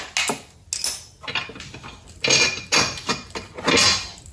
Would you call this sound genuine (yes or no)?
yes